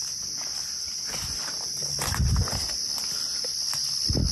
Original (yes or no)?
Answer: yes